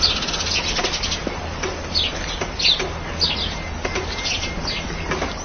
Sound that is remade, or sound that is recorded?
recorded